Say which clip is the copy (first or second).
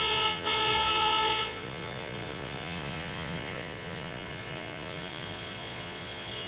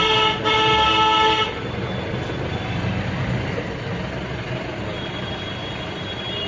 first